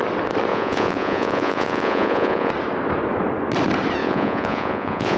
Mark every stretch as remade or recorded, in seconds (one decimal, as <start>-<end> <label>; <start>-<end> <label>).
0.0-0.5 recorded; 0.5-2.5 remade; 2.5-4.0 recorded; 4.0-5.2 remade